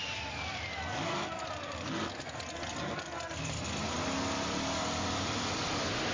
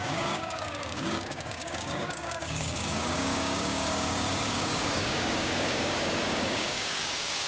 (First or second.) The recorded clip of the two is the first